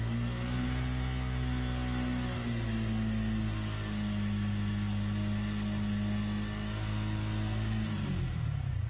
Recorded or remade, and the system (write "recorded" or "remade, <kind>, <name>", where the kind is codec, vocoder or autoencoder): recorded